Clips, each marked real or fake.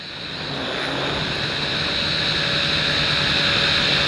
real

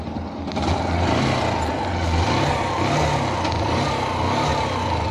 real